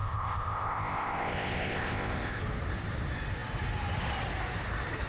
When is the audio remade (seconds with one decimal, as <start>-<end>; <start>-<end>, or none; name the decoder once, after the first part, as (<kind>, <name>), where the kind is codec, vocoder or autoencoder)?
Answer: 0.0-2.4 (codec, ZipCodec)